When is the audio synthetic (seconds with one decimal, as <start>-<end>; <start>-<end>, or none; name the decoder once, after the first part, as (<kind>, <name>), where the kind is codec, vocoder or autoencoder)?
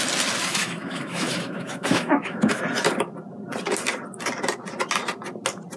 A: 0.5-2.6 (autoencoder, DAC-VAE)